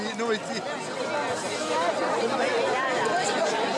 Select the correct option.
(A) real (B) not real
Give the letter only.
A